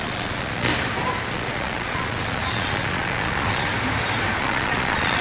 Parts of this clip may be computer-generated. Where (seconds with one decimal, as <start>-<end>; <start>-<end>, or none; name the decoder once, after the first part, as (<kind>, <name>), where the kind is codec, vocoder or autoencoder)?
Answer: 0.0-0.7 (vocoder, Vocos); 1.3-3.7; 4.4-5.2